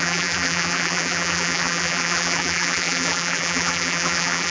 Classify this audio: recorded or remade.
remade